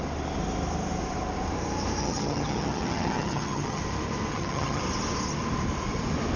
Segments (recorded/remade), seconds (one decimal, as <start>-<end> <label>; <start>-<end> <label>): 0.0-2.0 recorded; 2.0-3.8 remade; 3.8-4.3 recorded; 4.3-4.8 remade; 4.8-6.4 recorded